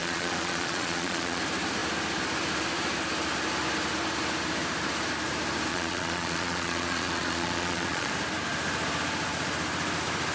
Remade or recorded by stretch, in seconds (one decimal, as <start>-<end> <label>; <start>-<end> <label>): 0.0-1.4 remade; 1.4-5.7 recorded; 5.7-8.1 remade; 8.1-10.3 recorded